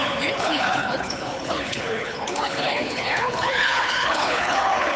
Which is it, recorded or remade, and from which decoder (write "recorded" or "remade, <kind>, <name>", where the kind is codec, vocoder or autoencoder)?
remade, codec, HILCodec